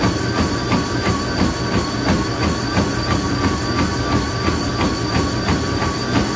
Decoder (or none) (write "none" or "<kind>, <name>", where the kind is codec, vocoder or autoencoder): none